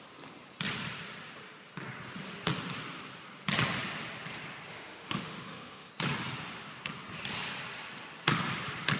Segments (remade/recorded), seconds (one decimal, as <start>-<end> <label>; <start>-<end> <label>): 0.0-4.7 recorded; 4.7-5.9 remade; 5.9-9.0 recorded